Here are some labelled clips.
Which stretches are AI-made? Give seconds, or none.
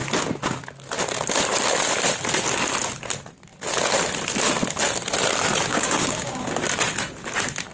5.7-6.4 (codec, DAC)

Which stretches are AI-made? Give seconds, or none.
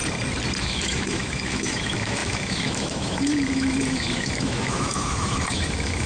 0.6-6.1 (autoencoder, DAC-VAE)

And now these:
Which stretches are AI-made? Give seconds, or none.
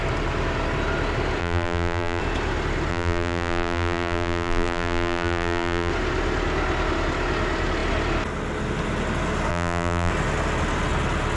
1.4-2.2 (vocoder, BigVGAN v2); 2.9-5.9; 9.5-10.1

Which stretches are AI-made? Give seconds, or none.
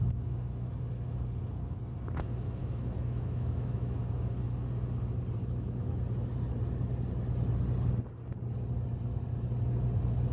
2.6-4.0 (autoencoder, DAC-VAE); 5.4-6.0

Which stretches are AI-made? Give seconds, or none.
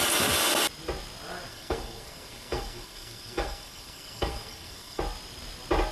1.5-5.0 (codec, SNAC)